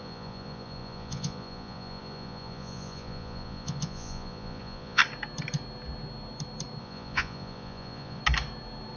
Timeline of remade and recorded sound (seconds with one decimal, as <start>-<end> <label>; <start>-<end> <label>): 0.0-5.0 remade; 5.0-6.8 recorded; 6.8-8.2 remade; 8.2-9.0 recorded